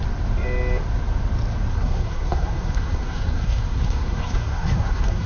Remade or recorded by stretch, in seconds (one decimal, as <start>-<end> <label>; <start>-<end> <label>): 0.0-1.7 recorded; 1.7-5.3 remade

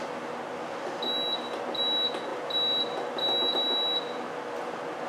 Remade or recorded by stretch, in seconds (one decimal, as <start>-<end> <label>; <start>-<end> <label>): 0.0-5.1 recorded

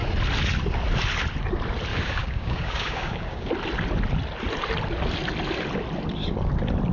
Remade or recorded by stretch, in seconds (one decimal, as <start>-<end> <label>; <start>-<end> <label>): 0.0-1.9 recorded; 1.9-3.5 remade; 3.5-6.9 recorded

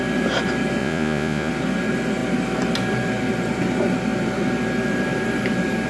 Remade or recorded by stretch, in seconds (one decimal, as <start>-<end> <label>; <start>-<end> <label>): 0.0-0.8 recorded; 0.8-1.5 remade; 1.5-5.9 recorded

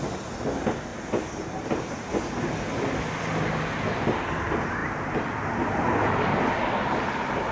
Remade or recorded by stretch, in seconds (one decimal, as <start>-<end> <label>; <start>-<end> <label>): 0.0-7.5 recorded

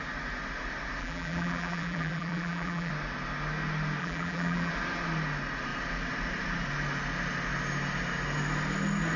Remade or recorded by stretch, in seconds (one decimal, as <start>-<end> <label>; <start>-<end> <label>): 0.0-1.0 recorded; 1.0-2.9 remade; 2.9-4.0 recorded; 4.0-4.7 remade; 4.7-9.2 recorded

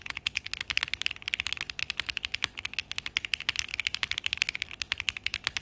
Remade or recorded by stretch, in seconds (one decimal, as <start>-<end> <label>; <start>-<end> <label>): 0.0-5.6 recorded